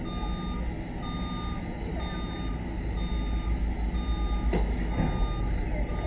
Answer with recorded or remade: recorded